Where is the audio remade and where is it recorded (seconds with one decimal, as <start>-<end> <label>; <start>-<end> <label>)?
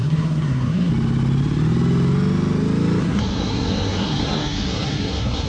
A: 0.0-0.9 remade; 0.9-3.0 recorded; 3.0-5.5 remade